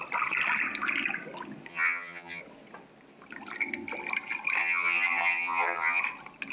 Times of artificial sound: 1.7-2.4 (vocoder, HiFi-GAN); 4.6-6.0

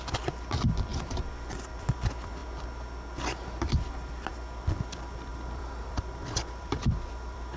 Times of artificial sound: 5.3-7.6 (vocoder, BigVGAN v2)